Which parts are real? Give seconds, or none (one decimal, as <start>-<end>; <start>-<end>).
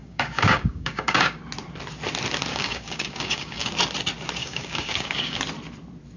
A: 1.4-2.5; 3.7-4.4; 5.4-6.2